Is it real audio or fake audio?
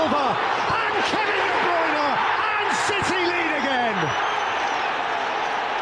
real